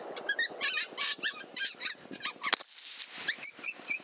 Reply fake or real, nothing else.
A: real